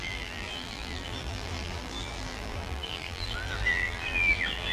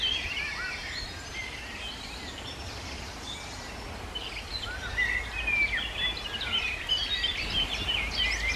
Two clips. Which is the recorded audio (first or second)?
second